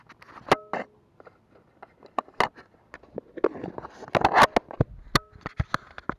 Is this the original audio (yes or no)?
yes